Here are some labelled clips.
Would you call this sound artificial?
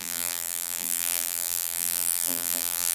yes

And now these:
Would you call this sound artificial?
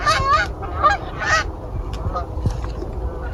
no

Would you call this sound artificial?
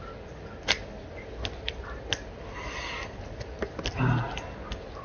no